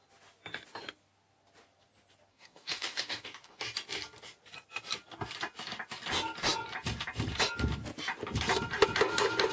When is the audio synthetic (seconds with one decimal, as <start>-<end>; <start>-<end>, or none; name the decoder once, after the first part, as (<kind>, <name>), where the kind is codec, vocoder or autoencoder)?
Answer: 2.3-3.6 (codec, DAC)